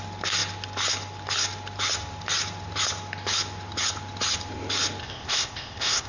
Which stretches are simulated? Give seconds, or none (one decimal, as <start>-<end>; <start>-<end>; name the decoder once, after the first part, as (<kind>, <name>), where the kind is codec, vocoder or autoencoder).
5.0-6.1 (codec, ZipCodec)